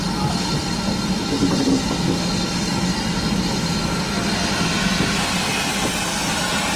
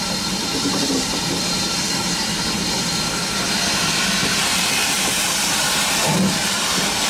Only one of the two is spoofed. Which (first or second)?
second